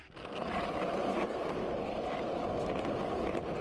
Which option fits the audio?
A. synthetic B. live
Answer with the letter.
B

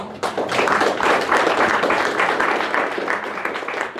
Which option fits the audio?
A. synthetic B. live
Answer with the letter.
A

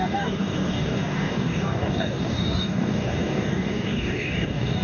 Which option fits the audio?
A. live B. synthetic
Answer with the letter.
B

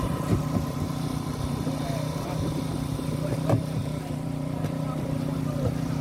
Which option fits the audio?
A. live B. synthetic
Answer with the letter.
B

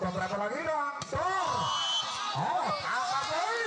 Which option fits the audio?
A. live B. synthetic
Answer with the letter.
A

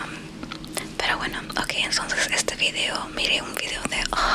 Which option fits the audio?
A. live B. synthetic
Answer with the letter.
A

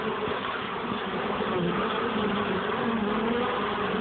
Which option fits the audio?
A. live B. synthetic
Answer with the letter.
A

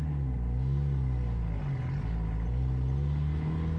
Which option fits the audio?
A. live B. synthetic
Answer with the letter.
A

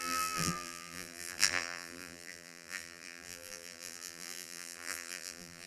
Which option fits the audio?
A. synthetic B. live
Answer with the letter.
A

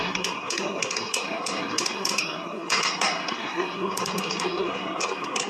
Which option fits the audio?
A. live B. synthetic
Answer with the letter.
B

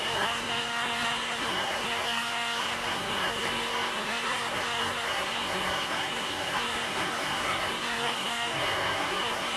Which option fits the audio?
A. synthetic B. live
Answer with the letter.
A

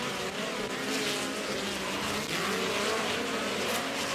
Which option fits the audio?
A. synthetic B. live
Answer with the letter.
B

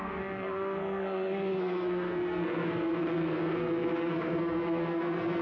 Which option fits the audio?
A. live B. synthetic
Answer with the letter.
B